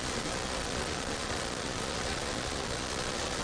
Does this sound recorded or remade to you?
remade